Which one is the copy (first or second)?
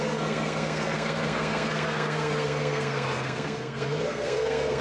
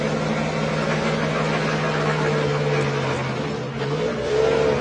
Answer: first